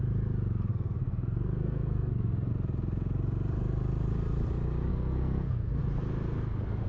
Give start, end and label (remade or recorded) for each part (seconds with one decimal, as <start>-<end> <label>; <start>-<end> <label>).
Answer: 0.0-0.7 recorded; 0.7-2.5 remade; 2.5-4.9 recorded; 4.9-5.8 remade; 5.8-6.9 recorded

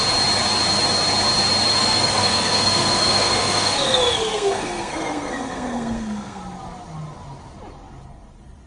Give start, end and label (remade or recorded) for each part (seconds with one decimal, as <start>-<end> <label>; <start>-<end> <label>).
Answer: 0.0-1.8 recorded; 1.8-6.4 remade; 6.4-8.7 recorded